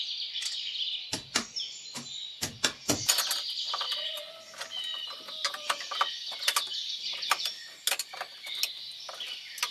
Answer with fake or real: real